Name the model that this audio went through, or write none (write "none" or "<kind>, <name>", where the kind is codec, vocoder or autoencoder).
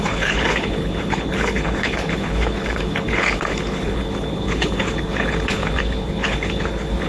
codec, HILCodec